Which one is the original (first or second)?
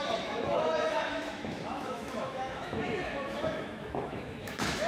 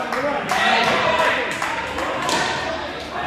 second